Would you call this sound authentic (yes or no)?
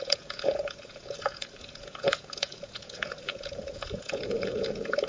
no